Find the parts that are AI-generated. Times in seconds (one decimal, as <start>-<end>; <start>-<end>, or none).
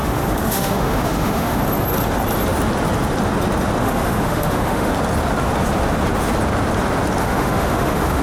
0.0-1.6; 3.8-4.9; 7.2-8.2